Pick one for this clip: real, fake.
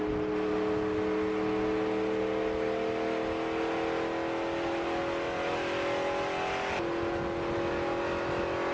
real